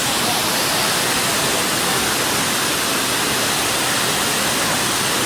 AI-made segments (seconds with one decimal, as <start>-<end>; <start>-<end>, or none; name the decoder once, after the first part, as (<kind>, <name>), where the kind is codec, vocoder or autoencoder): none

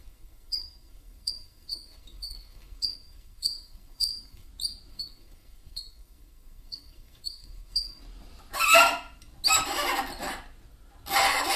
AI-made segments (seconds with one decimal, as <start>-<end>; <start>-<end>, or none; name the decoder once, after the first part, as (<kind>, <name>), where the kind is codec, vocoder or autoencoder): 0.0-4.5 (codec, SNAC); 4.9-8.0

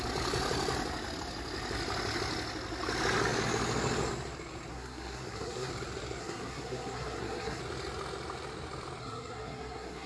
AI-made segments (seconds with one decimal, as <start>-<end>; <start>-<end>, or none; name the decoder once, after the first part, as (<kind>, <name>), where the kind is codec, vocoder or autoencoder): 4.7-5.7 (codec, SNAC); 6.2-7.6; 9.0-10.1